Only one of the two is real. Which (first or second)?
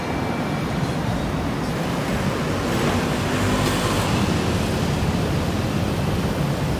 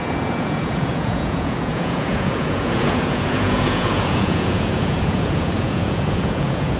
first